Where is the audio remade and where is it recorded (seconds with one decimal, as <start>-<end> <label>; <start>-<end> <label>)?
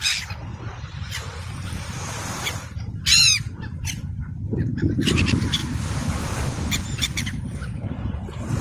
0.0-0.5 recorded; 0.5-5.1 remade; 5.1-5.6 recorded; 5.6-7.0 remade; 7.0-8.6 recorded